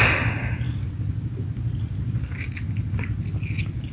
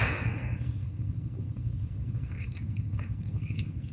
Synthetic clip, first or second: second